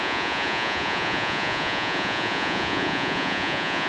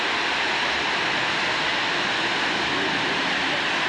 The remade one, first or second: first